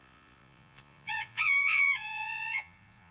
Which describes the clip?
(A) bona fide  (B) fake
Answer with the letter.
B